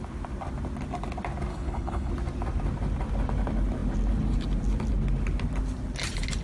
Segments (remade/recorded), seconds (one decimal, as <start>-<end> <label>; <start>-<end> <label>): 0.0-1.5 recorded; 1.5-2.1 remade; 2.1-6.4 recorded